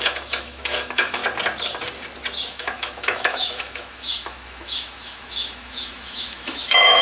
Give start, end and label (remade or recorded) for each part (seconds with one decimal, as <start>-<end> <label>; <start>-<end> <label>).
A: 0.0-1.2 remade; 1.2-2.5 recorded; 2.5-7.0 remade